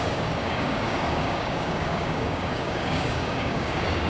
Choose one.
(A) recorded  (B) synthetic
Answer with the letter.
B